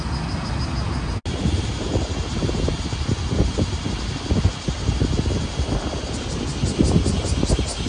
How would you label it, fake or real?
real